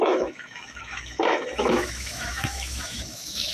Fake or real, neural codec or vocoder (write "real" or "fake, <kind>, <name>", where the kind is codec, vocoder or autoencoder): fake, autoencoder, DAC-VAE